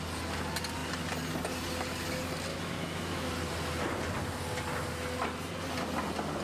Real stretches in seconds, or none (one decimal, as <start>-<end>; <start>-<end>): 0.0-2.5; 3.3-6.4

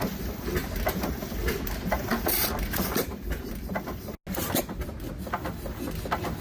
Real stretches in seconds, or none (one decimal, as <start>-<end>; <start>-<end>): 0.0-6.4

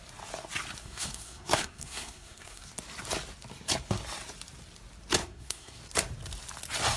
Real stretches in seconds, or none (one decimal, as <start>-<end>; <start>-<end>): 0.0-0.8; 2.7-5.2; 5.8-7.0